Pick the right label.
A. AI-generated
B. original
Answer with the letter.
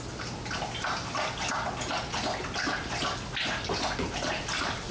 B